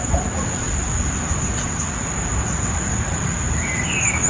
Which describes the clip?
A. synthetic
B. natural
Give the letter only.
B